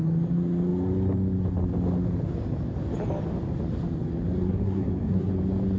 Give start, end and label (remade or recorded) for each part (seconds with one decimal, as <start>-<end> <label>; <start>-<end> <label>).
0.0-4.4 recorded; 4.4-5.3 remade; 5.3-5.8 recorded